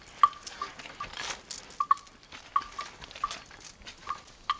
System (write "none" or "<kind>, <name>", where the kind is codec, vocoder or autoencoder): none